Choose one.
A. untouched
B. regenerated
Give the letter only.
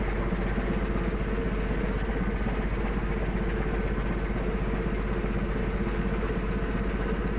A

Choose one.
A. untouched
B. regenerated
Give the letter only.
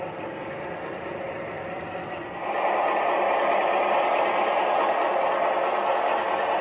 A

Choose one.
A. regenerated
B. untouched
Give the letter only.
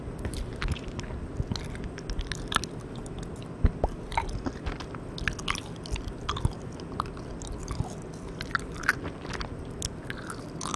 B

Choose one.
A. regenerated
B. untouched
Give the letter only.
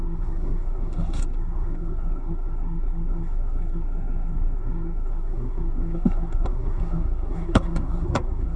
A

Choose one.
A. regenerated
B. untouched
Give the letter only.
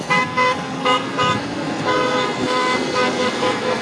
A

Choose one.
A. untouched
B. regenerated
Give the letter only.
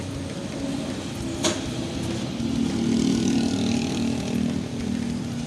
A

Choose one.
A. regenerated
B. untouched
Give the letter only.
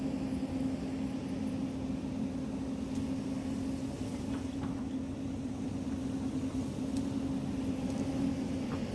B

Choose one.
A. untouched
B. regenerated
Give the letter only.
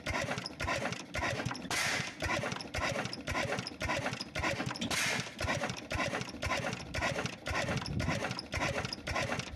A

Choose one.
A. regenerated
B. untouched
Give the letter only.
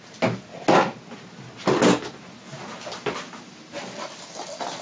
B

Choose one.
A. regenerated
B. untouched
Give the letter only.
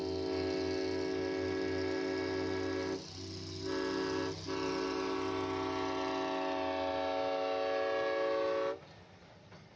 B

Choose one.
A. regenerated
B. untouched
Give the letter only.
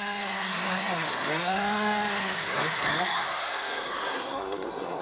A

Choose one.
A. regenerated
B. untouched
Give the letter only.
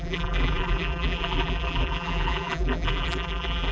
A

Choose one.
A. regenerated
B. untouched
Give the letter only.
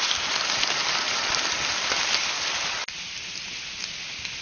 B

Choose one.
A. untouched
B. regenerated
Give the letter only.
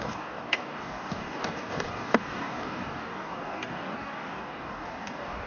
B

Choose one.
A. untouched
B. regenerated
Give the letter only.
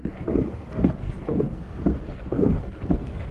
B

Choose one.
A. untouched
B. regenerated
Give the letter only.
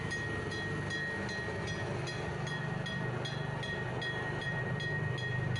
A